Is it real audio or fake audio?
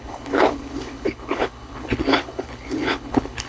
fake